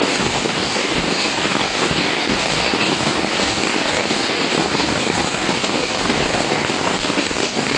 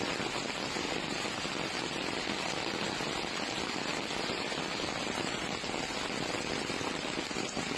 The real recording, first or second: second